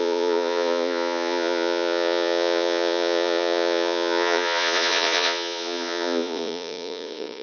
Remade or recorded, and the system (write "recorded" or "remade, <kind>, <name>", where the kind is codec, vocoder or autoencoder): remade, vocoder, Vocos